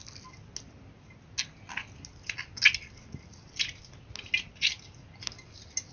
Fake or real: real